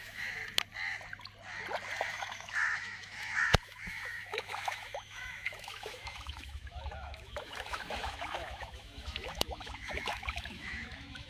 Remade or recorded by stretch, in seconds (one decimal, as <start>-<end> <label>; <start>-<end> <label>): 0.0-0.4 remade; 0.4-2.1 recorded; 2.1-11.3 remade